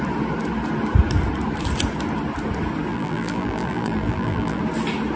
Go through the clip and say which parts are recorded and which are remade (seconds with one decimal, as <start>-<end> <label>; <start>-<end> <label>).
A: 0.0-2.9 recorded; 2.9-4.6 remade; 4.6-5.2 recorded